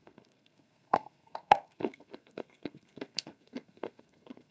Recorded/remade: remade